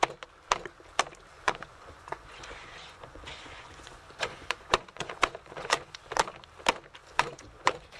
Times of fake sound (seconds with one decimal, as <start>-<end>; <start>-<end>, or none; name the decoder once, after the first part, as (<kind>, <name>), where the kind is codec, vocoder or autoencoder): 1.3-6.0 (vocoder, Vocos); 7.0-8.0